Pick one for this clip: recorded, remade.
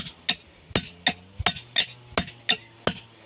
recorded